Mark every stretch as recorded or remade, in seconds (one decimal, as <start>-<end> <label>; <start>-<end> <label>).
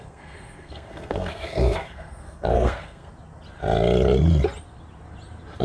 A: 0.0-3.1 remade; 3.1-5.6 recorded